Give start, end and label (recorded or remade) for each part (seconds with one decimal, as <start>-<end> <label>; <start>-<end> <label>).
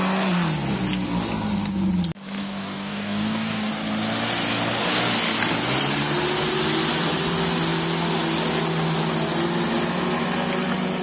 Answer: 0.0-2.4 recorded; 2.4-3.7 remade; 3.7-11.0 recorded